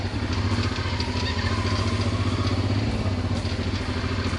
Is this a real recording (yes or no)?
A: yes